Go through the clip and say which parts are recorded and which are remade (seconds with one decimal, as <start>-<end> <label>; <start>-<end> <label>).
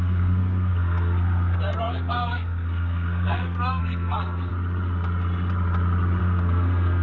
0.0-4.5 remade; 4.5-6.2 recorded; 6.2-7.0 remade